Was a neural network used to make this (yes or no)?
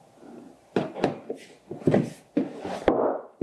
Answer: no